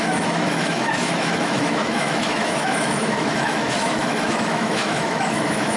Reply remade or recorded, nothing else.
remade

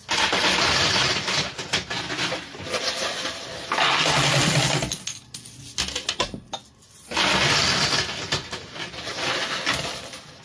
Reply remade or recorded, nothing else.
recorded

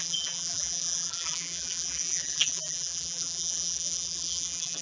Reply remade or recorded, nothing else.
remade